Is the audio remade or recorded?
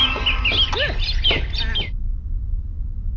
recorded